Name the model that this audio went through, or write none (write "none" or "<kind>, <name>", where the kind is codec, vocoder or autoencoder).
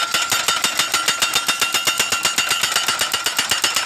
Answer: none